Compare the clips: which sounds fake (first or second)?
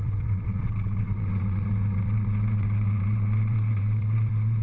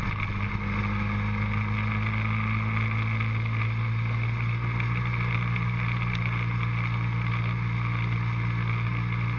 first